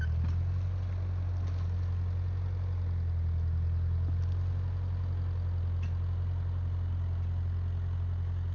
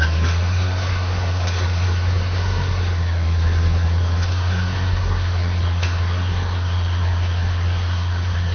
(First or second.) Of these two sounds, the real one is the first